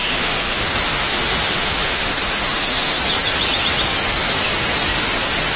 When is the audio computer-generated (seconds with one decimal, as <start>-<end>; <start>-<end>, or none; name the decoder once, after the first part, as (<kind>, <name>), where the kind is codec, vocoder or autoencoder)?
0.0-3.0 (autoencoder, DAC-VAE)